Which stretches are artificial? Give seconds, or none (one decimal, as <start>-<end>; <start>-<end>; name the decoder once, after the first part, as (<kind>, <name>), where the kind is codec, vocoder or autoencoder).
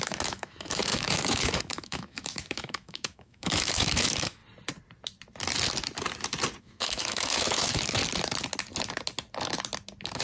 0.0-4.4 (autoencoder, DAC-VAE); 6.6-8.0